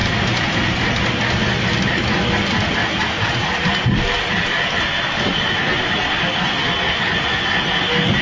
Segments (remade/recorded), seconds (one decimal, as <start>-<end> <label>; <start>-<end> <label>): 0.0-1.1 remade; 1.1-2.8 recorded; 2.8-5.2 remade; 5.2-8.2 recorded